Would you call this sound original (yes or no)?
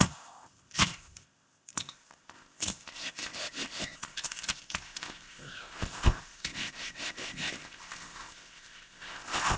no